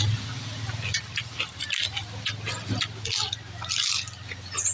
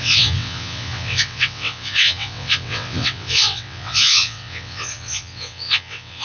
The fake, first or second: second